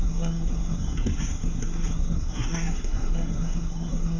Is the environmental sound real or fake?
fake